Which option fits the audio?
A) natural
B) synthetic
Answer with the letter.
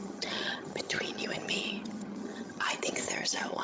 B